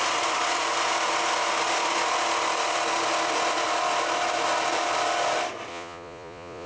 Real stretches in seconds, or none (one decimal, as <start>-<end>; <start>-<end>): 0.0-5.7